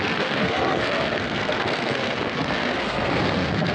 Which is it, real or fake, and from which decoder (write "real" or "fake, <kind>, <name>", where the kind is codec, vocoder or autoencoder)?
fake, codec, SNAC